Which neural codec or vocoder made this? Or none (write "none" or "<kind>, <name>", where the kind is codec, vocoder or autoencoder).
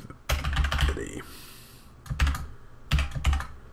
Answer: none